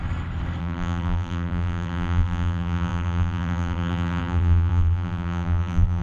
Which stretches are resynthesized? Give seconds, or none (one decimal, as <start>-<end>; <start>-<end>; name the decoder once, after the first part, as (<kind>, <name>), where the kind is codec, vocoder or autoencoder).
0.6-6.0 (vocoder, BigVGAN v2)